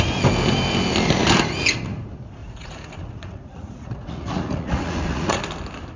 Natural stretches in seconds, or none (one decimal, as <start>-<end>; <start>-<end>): 0.0-2.4; 5.4-6.0